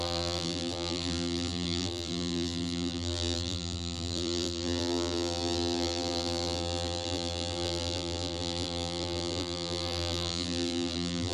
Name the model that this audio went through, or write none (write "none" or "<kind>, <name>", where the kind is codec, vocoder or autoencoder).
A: vocoder, BigVGAN v2